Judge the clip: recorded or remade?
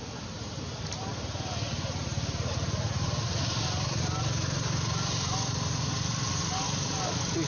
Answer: recorded